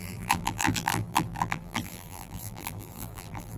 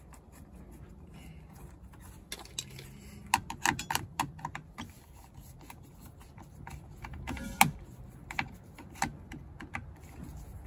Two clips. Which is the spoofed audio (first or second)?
first